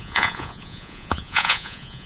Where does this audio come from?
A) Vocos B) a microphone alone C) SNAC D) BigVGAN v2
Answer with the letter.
A